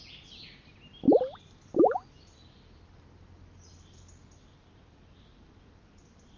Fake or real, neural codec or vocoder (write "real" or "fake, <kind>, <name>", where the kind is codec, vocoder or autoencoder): real